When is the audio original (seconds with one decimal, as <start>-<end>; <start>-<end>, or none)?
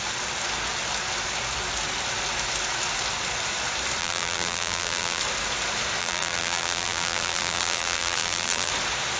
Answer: 0.0-4.0; 5.2-6.0; 8.7-9.2